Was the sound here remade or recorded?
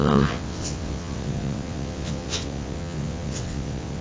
remade